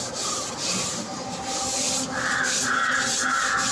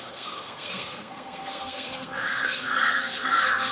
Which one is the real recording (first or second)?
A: first